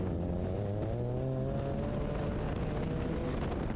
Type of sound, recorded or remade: recorded